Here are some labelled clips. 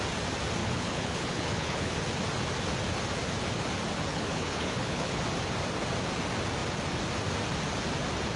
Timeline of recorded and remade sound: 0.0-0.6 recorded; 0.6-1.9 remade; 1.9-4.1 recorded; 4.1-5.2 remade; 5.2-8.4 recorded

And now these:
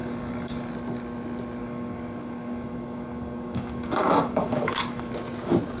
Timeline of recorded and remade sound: 0.0-0.7 remade; 0.7-1.6 recorded; 1.6-5.1 remade; 5.1-5.8 recorded

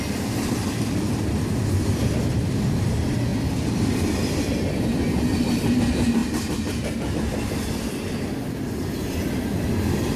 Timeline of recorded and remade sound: 0.0-10.2 recorded

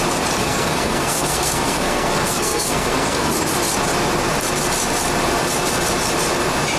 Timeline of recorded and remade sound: 0.0-0.4 recorded; 0.4-3.3 remade; 3.3-6.8 recorded

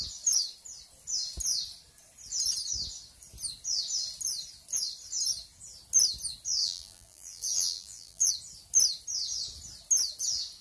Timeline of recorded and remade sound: 0.0-6.6 recorded; 6.6-8.3 remade; 8.3-10.6 recorded

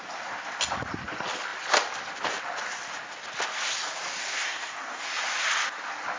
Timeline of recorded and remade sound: 0.0-4.3 recorded; 4.3-5.0 remade; 5.0-6.2 recorded

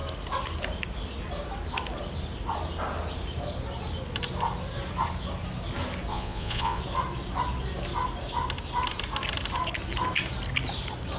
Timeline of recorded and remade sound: 0.0-6.1 recorded; 6.1-6.8 remade; 6.8-11.2 recorded